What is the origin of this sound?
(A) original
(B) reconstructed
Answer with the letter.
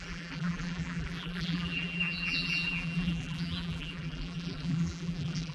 B